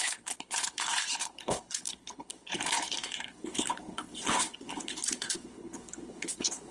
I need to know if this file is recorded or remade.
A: remade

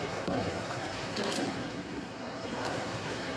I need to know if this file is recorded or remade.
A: remade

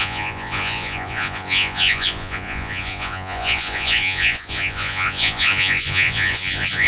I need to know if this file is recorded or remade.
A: remade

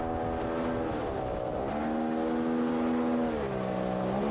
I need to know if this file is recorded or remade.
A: recorded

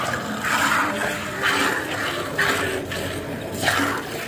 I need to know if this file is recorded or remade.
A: recorded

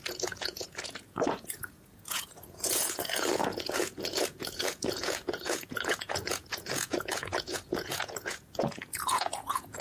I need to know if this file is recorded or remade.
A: remade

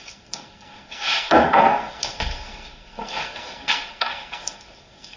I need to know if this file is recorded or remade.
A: remade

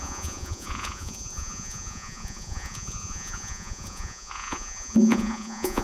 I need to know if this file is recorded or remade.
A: remade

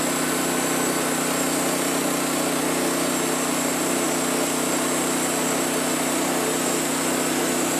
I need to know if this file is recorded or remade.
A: recorded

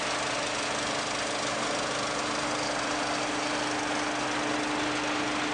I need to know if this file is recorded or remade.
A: recorded